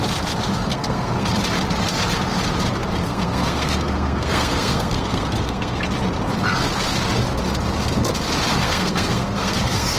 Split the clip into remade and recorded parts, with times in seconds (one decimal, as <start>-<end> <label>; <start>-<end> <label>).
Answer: 0.0-0.7 recorded; 0.7-1.3 remade; 1.3-3.0 recorded; 3.0-5.8 remade; 5.8-8.6 recorded; 8.6-10.0 remade